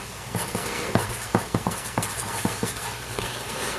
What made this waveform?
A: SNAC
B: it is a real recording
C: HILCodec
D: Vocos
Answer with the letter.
A